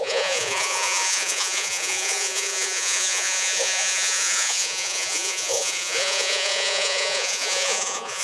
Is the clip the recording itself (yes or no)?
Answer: no